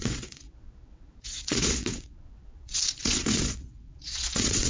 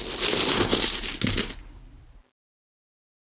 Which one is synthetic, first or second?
first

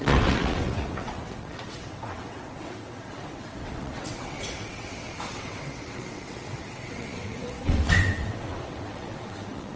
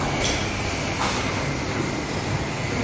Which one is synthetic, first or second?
first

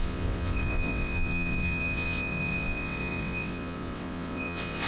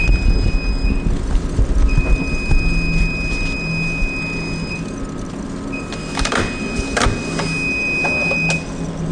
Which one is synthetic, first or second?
first